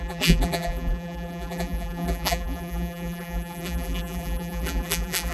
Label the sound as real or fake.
fake